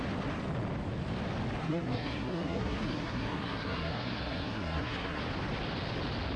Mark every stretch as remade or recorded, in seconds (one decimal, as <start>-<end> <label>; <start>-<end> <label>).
0.0-1.6 recorded; 1.6-5.2 remade; 5.2-6.4 recorded